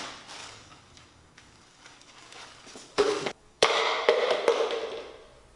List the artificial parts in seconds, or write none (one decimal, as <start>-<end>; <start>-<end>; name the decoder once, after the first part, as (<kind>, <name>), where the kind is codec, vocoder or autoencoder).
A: 0.4-3.8 (codec, DAC)